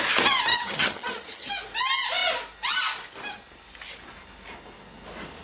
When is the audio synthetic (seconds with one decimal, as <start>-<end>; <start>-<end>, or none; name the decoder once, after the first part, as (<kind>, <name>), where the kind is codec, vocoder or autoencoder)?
0.5-1.5 (vocoder, HiFi-GAN)